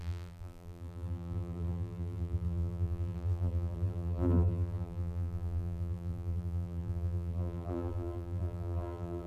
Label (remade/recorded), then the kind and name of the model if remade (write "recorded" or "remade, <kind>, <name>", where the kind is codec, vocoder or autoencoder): remade, vocoder, BigVGAN v2